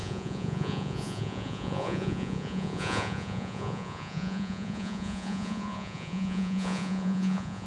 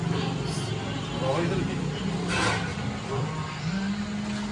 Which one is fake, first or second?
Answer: first